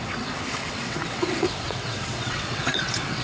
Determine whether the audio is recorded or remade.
remade